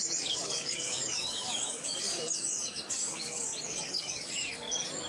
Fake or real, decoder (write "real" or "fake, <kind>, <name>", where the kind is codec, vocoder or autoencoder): fake, codec, DAC